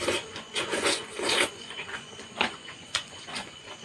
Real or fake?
fake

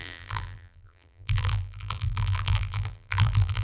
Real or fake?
fake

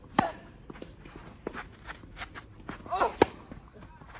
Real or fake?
fake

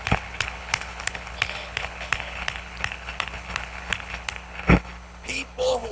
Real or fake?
fake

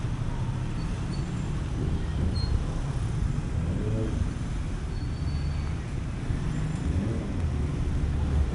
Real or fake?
real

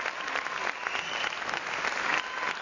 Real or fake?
real